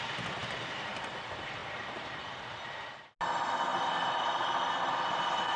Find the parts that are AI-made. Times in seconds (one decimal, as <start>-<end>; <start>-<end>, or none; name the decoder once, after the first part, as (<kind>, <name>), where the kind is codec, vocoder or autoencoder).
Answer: 1.6-2.4 (vocoder, BigVGAN v2)